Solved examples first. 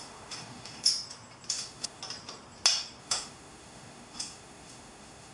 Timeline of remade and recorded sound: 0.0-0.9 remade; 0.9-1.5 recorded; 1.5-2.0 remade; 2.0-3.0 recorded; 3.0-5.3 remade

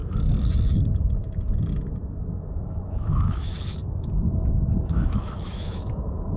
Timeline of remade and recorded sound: 0.0-2.1 recorded; 2.1-3.8 remade; 3.8-4.9 recorded; 4.9-6.4 remade